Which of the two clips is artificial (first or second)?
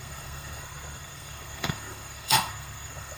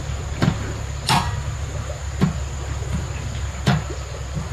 first